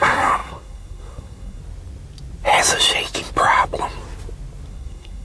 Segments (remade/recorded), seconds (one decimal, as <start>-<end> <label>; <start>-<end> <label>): 0.0-1.6 remade; 1.6-4.7 recorded; 4.7-5.2 remade